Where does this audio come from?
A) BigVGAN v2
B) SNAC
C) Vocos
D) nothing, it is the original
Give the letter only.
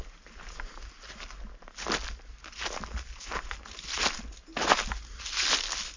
D